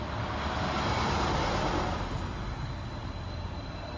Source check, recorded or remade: recorded